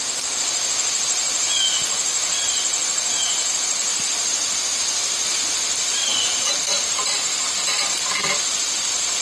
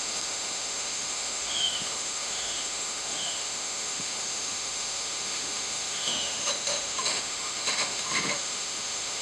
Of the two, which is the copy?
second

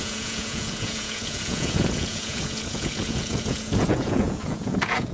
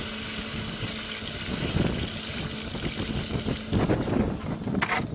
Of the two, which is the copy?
first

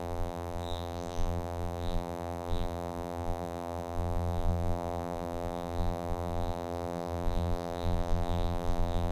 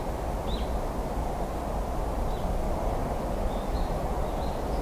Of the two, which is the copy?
first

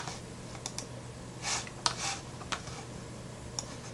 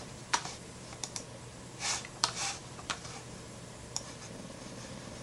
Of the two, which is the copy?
second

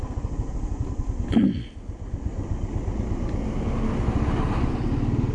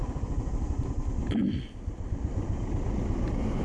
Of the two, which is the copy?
second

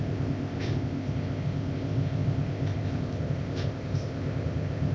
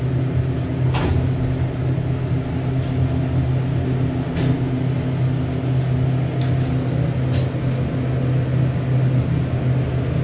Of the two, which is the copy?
first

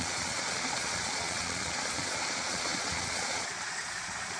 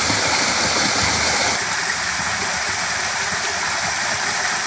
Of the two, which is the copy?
first